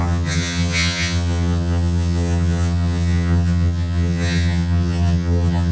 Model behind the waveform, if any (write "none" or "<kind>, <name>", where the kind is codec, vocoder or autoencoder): vocoder, HiFi-GAN